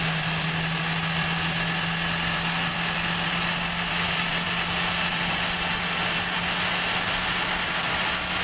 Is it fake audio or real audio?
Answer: real